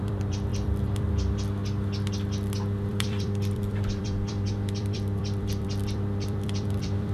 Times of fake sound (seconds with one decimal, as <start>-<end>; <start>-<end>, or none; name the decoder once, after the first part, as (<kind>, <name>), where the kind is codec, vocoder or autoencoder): 0.0-1.6 (vocoder, BigVGAN v2); 2.9-7.1